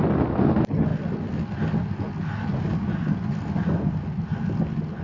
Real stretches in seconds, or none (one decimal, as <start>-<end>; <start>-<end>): 0.0-5.0